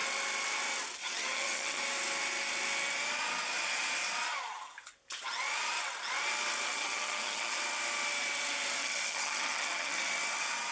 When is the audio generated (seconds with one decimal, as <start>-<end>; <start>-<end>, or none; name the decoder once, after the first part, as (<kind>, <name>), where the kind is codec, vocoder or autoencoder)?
1.0-1.8 (vocoder, HiFi-GAN); 6.7-7.6; 8.8-10.0